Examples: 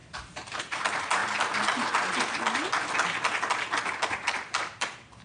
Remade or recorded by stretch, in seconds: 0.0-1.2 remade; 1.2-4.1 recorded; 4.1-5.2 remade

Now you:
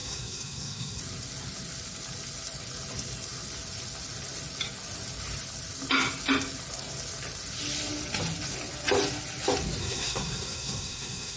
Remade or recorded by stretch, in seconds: 0.0-1.0 remade; 1.0-9.8 recorded; 9.8-11.4 remade

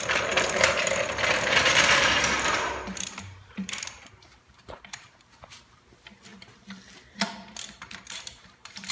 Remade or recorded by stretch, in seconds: 0.0-6.3 remade; 6.3-7.8 recorded; 7.8-8.9 remade